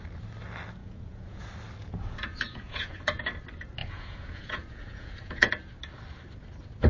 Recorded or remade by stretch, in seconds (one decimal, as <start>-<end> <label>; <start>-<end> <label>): 0.0-0.8 recorded; 0.8-1.4 remade; 1.4-1.8 recorded; 1.8-3.2 remade; 3.2-3.8 recorded; 3.8-5.5 remade; 5.5-6.9 recorded